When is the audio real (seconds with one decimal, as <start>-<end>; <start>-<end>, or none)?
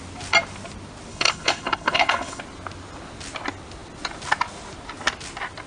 0.0-1.1; 2.4-5.7